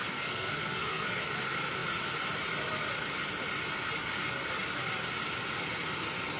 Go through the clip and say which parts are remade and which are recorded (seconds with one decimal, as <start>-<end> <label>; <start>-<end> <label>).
0.0-1.2 remade; 1.2-6.4 recorded